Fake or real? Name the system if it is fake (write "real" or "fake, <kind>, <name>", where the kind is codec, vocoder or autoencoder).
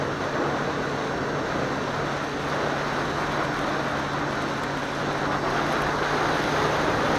real